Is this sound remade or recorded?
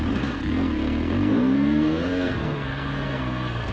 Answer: remade